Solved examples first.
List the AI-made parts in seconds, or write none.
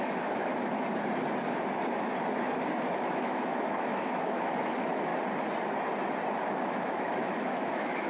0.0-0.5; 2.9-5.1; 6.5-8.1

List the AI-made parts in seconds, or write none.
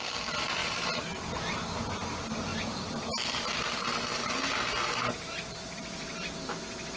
none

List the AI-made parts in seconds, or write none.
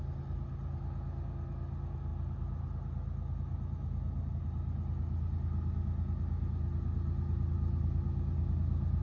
none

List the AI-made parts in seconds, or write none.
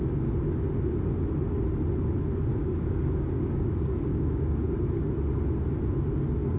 2.5-4.8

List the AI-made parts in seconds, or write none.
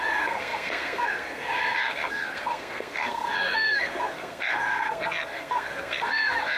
0.0-6.6